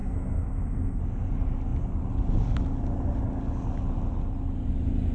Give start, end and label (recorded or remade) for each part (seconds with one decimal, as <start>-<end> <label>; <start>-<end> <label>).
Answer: 0.0-1.0 remade; 1.0-5.1 recorded